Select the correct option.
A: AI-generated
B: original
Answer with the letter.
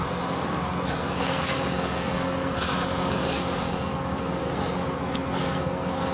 A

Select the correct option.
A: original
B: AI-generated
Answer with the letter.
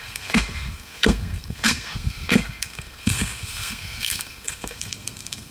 B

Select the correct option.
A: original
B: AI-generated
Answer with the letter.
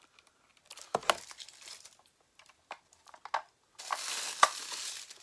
A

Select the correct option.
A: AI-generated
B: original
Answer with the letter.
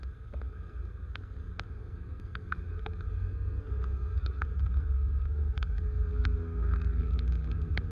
A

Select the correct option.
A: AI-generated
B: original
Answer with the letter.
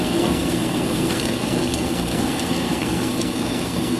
A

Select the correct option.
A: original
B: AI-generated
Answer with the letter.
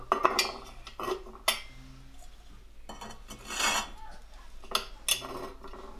A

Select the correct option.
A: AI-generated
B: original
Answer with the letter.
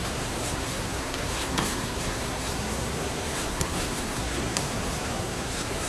A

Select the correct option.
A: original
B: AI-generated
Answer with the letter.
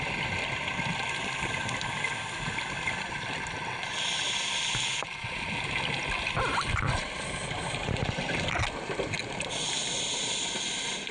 A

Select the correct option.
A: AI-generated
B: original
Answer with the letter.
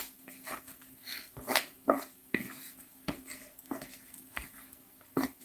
A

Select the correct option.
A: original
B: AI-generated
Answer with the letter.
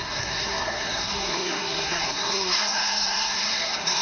B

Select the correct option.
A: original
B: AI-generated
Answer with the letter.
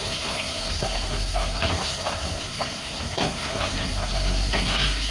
B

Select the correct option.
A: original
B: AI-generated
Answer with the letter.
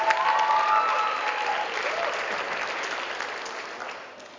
A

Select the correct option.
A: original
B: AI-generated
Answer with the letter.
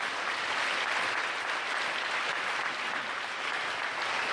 A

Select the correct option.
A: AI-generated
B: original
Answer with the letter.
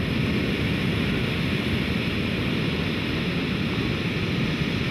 B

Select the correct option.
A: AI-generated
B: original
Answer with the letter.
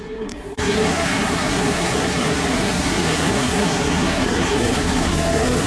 A